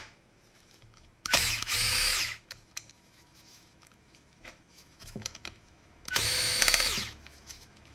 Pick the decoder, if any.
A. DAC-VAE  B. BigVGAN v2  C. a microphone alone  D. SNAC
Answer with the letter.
A